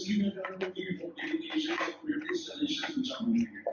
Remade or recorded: remade